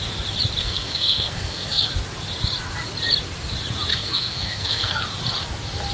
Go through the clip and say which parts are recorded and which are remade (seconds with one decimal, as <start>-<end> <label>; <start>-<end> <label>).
0.0-0.6 recorded; 0.6-1.9 remade; 1.9-3.9 recorded; 3.9-5.0 remade; 5.0-5.9 recorded